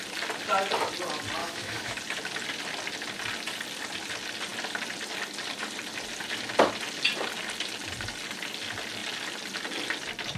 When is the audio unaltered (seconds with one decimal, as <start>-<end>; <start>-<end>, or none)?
0.0-1.4; 2.0-10.4